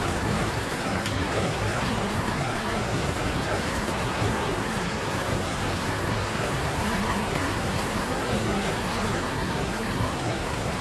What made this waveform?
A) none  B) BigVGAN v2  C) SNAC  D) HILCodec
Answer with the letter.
C